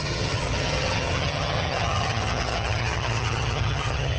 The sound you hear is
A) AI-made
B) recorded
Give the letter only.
A